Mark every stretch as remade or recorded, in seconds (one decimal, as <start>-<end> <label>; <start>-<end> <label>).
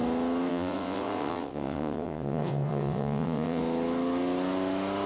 0.0-0.5 recorded; 0.5-3.6 remade; 3.6-5.1 recorded